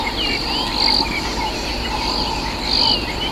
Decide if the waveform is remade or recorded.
recorded